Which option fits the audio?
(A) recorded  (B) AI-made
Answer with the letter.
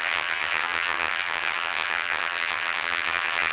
B